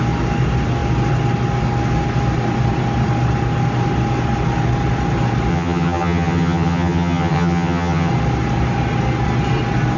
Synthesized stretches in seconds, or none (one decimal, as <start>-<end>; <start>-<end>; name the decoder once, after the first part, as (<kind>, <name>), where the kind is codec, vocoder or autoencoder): 5.5-8.1 (vocoder, HiFi-GAN)